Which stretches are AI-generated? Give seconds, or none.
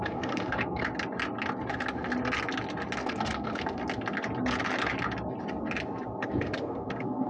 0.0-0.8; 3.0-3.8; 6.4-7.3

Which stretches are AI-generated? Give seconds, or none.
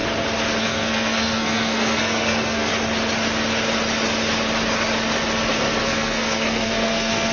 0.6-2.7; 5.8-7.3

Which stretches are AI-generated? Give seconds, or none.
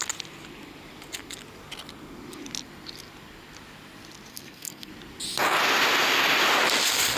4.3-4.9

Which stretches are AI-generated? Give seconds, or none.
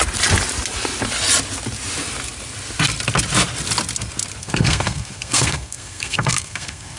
4.4-7.0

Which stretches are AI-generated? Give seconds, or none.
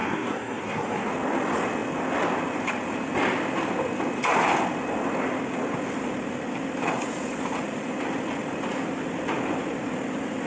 0.0-1.1